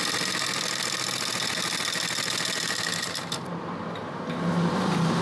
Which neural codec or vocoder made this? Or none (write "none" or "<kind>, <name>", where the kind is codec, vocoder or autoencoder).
none